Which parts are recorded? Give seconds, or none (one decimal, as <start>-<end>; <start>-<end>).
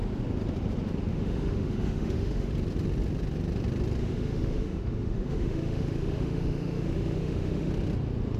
0.0-1.1; 2.5-4.0; 7.7-8.4